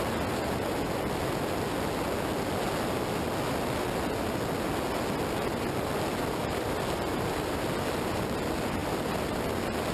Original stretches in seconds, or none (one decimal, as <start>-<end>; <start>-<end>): 0.0-9.9